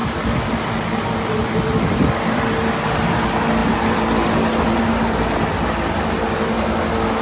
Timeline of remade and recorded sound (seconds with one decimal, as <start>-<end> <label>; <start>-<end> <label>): 0.0-7.2 recorded